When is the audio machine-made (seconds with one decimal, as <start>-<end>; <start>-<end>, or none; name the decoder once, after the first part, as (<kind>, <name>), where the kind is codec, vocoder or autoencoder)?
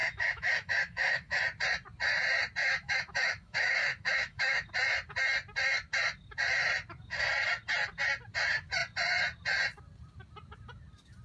0.0-1.4 (autoencoder, DAC-VAE); 2.6-4.7